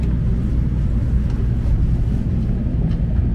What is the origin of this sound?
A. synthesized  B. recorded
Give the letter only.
B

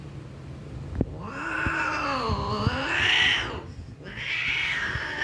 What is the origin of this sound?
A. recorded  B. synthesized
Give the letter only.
A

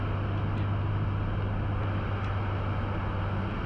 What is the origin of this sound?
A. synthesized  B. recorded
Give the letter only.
B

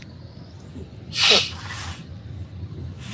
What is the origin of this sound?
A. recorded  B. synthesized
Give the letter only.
A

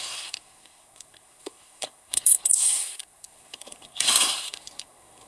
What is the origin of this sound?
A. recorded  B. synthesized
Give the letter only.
B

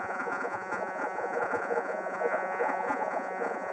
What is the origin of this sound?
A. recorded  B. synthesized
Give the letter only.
B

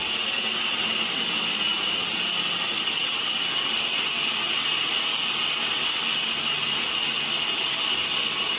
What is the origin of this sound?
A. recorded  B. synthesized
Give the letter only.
A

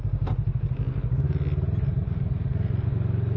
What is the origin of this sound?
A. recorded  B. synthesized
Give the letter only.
A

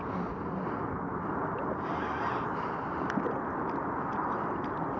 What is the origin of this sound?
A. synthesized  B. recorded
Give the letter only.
B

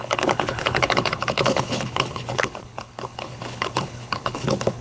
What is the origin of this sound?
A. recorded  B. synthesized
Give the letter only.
B